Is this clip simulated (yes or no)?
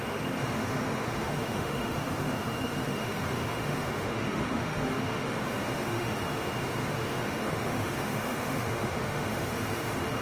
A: yes